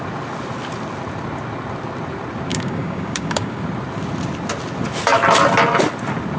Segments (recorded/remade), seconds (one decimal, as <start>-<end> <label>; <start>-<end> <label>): 0.0-2.5 recorded; 2.5-3.6 remade; 3.6-6.4 recorded